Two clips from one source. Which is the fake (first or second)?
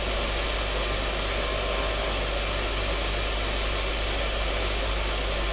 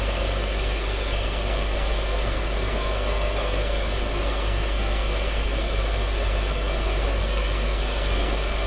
second